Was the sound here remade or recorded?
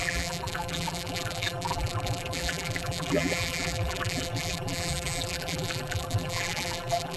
remade